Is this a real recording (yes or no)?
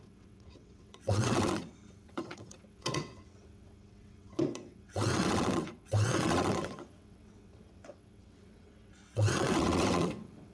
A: no